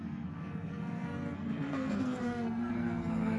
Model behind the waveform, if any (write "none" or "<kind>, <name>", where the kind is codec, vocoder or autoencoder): codec, SNAC